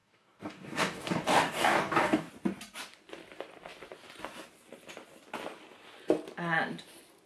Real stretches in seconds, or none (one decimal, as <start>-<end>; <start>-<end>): 2.3-7.3